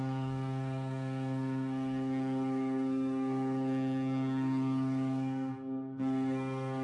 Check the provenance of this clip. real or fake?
fake